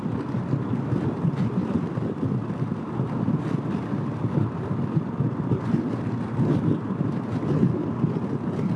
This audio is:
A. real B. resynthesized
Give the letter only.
A